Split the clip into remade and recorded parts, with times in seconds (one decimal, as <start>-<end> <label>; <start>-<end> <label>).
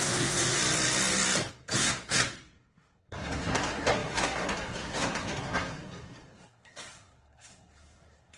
0.0-0.6 remade; 0.6-1.5 recorded; 1.5-8.4 remade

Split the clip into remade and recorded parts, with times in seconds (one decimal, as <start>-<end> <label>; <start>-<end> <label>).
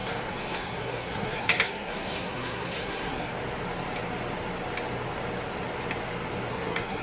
0.0-3.3 remade; 3.3-6.5 recorded; 6.5-7.0 remade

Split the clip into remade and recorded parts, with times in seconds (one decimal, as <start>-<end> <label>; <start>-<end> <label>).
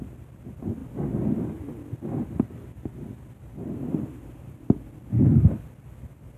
0.0-6.4 recorded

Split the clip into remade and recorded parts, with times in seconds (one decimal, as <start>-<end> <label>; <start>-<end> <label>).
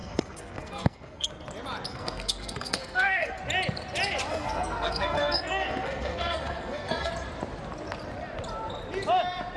0.0-1.3 remade; 1.3-1.9 recorded; 1.9-3.4 remade; 3.4-4.3 recorded; 4.3-7.1 remade; 7.1-9.6 recorded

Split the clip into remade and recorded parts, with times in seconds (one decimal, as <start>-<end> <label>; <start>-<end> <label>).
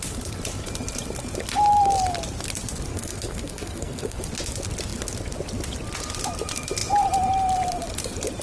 0.0-2.9 recorded; 2.9-4.2 remade; 4.2-8.4 recorded